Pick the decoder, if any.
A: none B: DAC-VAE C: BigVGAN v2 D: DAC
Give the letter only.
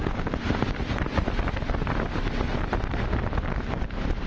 A